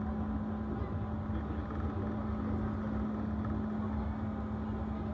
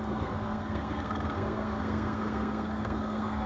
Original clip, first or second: first